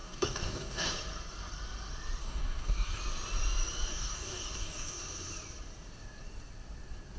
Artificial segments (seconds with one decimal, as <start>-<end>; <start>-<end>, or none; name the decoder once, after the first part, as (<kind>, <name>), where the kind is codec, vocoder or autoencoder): 0.0-0.9 (codec, DAC); 2.2-3.0; 3.9-5.0